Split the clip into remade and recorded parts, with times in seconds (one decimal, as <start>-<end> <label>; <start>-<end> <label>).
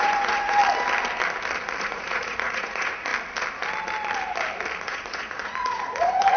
0.0-0.6 remade; 0.6-1.8 recorded; 1.8-3.1 remade; 3.1-4.8 recorded; 4.8-6.4 remade